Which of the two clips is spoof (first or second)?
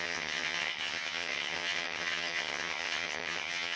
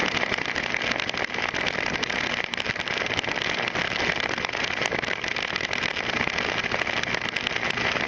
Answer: first